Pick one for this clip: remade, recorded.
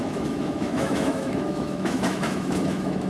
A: remade